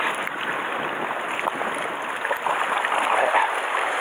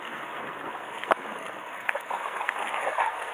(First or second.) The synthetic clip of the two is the second